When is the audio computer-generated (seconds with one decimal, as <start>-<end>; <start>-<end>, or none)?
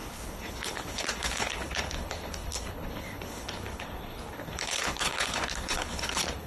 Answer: 0.0-6.5